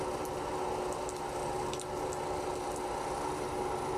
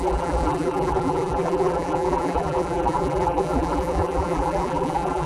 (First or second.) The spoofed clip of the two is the second